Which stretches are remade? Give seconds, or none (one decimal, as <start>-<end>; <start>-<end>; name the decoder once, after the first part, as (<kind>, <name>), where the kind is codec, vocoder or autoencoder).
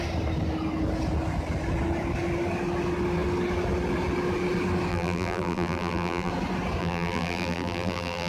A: 4.9-6.3 (vocoder, BigVGAN v2); 6.8-8.3